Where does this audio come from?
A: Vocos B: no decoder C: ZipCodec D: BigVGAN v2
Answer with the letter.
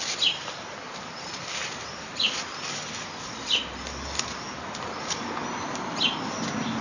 B